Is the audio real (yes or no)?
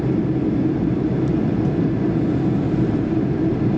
yes